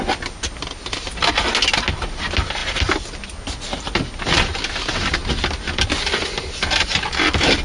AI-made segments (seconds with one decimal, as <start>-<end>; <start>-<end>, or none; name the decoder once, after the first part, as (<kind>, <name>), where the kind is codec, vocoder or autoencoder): none